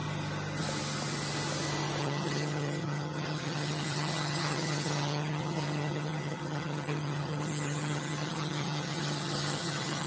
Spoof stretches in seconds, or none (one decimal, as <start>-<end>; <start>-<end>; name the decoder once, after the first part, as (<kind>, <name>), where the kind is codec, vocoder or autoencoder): 2.0-10.1 (vocoder, HiFi-GAN)